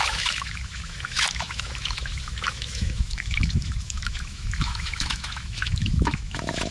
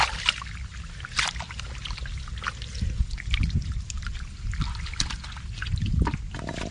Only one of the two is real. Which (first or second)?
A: second